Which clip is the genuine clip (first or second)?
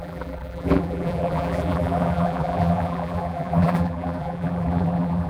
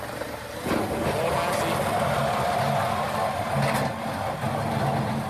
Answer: second